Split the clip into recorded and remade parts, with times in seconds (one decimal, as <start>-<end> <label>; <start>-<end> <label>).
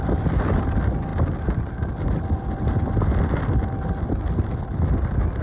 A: 0.0-5.4 recorded